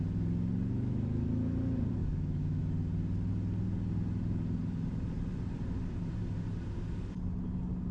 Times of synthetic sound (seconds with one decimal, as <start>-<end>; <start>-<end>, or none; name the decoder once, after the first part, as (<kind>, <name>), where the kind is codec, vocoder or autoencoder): 2.0-2.6 (autoencoder, DAC-VAE)